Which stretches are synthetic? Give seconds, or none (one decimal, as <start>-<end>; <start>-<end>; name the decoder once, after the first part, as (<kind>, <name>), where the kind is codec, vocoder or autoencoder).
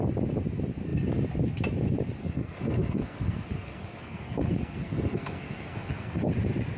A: 2.2-6.3 (codec, SNAC)